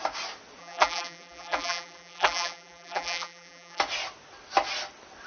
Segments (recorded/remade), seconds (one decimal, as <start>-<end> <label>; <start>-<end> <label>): 0.0-0.6 recorded; 0.6-3.8 remade; 3.8-5.3 recorded